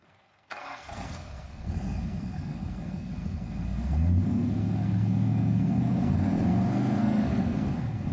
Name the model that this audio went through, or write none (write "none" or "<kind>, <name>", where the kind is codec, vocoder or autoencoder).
codec, SNAC